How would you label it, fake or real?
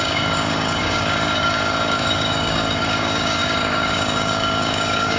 fake